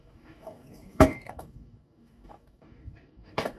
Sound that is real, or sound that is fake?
fake